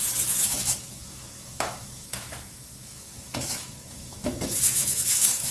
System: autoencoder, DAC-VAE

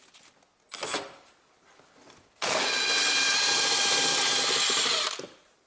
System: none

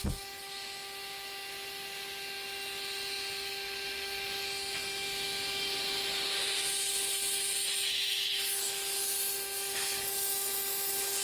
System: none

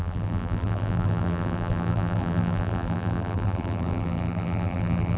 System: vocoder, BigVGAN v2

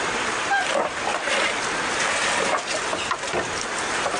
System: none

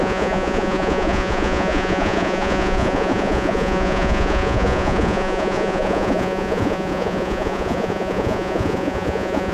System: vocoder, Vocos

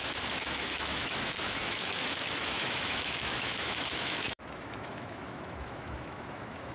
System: autoencoder, DAC-VAE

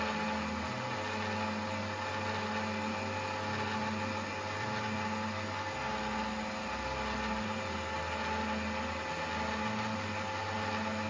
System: none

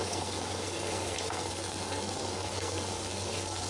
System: codec, SNAC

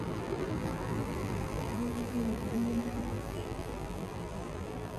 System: vocoder, BigVGAN v2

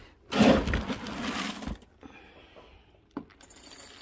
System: none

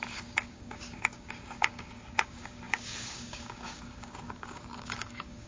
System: codec, DAC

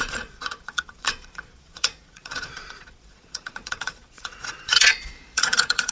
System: vocoder, Vocos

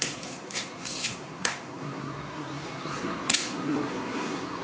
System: codec, SNAC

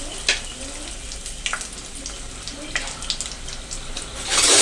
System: none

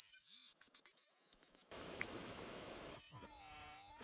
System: autoencoder, DAC-VAE